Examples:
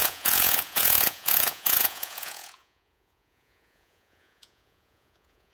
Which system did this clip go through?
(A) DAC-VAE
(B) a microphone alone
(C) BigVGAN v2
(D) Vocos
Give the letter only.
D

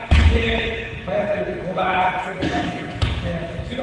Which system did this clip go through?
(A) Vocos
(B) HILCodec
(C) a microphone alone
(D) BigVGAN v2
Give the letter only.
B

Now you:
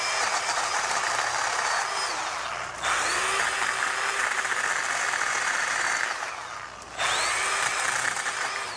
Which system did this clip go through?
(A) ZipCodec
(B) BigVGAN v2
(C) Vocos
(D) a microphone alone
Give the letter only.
D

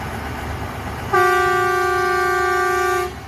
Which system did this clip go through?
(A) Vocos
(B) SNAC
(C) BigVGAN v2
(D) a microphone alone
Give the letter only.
D